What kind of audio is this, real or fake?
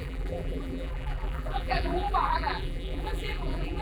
fake